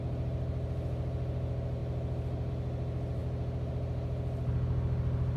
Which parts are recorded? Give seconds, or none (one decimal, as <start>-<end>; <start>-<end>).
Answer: 0.0-5.4